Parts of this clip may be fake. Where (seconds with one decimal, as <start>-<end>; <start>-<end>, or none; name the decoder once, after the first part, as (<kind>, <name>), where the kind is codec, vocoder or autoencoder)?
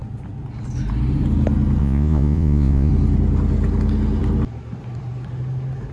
1.8-2.9 (vocoder, Vocos)